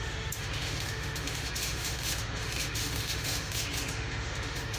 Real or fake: fake